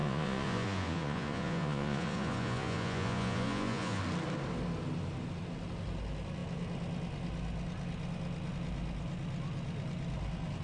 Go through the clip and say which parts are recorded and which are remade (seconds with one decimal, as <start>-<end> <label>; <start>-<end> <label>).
0.0-4.0 remade; 4.0-10.6 recorded

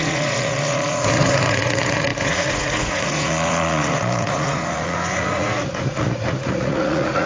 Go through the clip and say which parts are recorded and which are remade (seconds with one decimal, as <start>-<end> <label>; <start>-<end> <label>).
0.0-7.3 remade

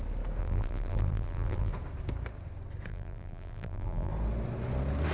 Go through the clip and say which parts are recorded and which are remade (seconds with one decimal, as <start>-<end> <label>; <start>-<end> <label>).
0.0-0.4 recorded; 0.4-1.7 remade; 1.7-2.9 recorded; 2.9-4.1 remade; 4.1-5.1 recorded

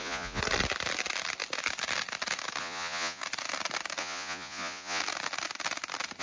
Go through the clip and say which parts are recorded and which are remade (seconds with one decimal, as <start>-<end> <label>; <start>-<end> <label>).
0.0-0.4 remade; 0.4-2.6 recorded; 2.6-3.2 remade; 3.2-4.0 recorded; 4.0-5.0 remade; 5.0-6.2 recorded

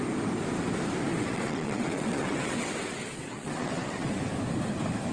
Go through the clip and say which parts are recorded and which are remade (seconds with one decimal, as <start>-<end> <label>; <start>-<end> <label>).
0.0-1.1 recorded; 1.1-4.2 remade; 4.2-5.1 recorded

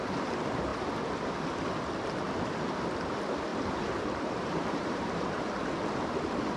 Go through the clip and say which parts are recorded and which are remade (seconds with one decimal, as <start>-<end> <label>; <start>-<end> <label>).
0.0-3.5 recorded; 3.5-5.3 remade; 5.3-6.6 recorded

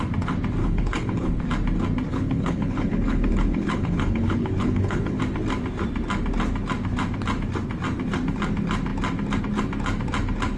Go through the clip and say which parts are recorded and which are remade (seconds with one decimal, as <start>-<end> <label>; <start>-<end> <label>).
0.0-0.6 recorded; 0.6-1.4 remade; 1.4-2.1 recorded; 2.1-5.2 remade; 5.2-10.6 recorded

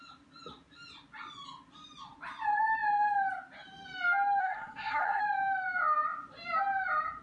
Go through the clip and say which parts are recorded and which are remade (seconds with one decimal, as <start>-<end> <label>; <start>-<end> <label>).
0.0-4.4 recorded; 4.4-5.2 remade; 5.2-7.2 recorded